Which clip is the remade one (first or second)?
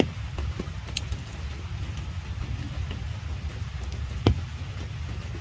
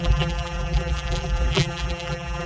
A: second